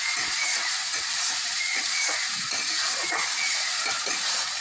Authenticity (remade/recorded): remade